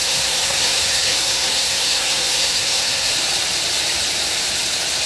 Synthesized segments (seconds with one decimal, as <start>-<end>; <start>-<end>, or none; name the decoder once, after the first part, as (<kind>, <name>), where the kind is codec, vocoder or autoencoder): 0.0-3.1 (codec, SNAC)

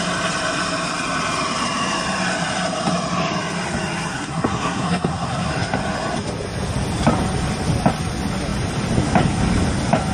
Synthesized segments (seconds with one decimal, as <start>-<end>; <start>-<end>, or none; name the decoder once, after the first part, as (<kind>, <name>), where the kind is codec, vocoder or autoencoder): 4.1-5.5 (codec, SNAC)

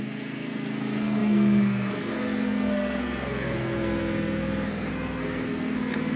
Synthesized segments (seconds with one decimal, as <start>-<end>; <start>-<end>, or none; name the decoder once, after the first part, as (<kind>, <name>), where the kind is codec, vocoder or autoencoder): 0.0-6.2 (codec, SNAC)